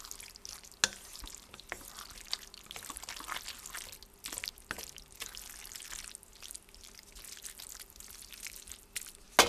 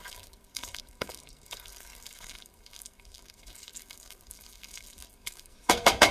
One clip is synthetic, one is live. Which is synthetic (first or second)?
second